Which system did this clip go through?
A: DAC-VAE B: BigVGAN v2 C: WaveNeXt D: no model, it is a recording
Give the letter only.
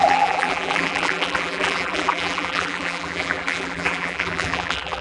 B